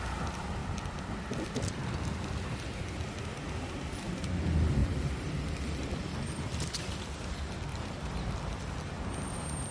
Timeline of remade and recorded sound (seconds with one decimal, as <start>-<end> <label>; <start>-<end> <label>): 0.0-0.6 recorded; 0.6-1.1 remade; 1.1-4.8 recorded; 4.8-7.2 remade; 7.2-7.7 recorded; 7.7-9.7 remade

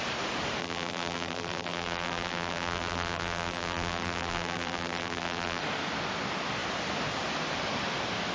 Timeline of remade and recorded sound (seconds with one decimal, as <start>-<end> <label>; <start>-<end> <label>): 0.0-0.6 recorded; 0.6-5.6 remade; 5.6-8.3 recorded

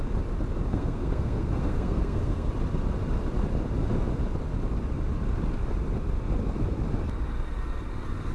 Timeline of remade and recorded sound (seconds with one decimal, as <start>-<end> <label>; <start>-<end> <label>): 0.0-0.7 recorded; 0.7-2.5 remade; 2.5-8.3 recorded

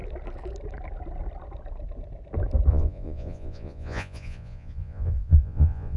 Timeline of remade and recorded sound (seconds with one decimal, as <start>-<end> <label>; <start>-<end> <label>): 0.0-2.7 recorded; 2.7-6.0 remade

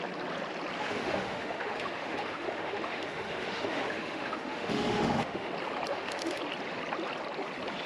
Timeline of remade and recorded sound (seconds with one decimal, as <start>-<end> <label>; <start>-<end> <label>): 0.0-0.8 recorded; 0.8-5.5 remade; 5.5-5.9 recorded; 5.9-6.4 remade; 6.4-7.9 recorded

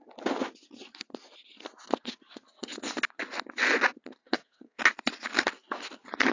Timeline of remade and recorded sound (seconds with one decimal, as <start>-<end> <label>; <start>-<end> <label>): 0.0-4.2 recorded; 4.2-4.8 remade; 4.8-6.3 recorded

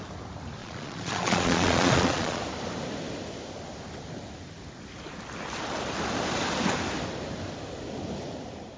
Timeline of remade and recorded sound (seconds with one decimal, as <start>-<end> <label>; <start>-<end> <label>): 0.0-0.6 recorded; 0.6-2.4 remade; 2.4-8.8 recorded

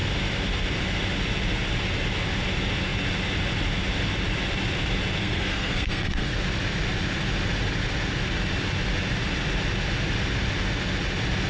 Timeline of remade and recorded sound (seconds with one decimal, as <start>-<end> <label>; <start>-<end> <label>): 0.0-5.2 recorded; 5.2-6.4 remade; 6.4-11.5 recorded